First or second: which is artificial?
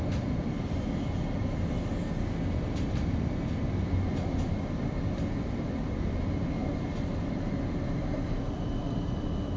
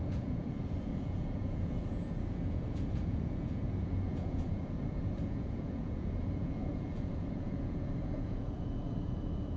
second